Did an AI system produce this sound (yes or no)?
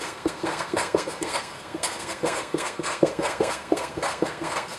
yes